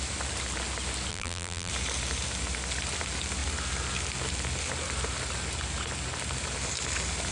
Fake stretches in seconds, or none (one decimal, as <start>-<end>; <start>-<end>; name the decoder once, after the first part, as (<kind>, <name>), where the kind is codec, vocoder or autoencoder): 1.1-1.7 (vocoder, BigVGAN v2)